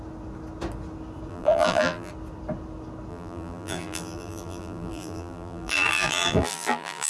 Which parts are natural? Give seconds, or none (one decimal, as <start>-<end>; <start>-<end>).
0.0-1.3; 2.1-3.1